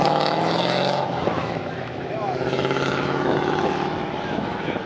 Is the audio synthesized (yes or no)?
yes